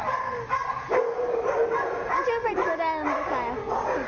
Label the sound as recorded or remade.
recorded